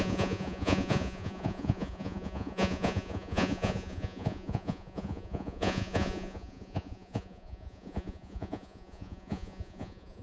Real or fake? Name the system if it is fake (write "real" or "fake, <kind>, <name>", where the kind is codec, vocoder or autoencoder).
fake, vocoder, Vocos